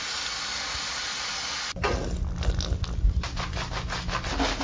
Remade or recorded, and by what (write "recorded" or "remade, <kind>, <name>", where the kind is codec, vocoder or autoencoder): recorded